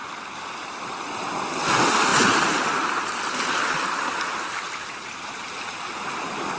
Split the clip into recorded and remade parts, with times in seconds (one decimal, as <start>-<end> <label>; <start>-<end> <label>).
0.0-0.8 remade; 0.8-6.6 recorded